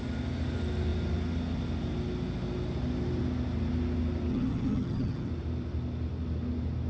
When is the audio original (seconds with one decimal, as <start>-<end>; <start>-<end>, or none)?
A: 0.0-4.3; 5.3-6.9